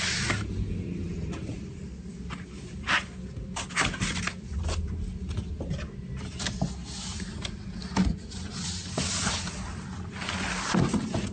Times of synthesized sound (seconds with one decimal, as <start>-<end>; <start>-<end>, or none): none